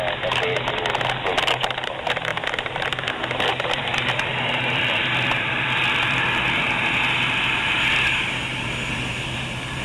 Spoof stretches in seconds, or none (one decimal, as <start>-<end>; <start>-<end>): 2.3-6.2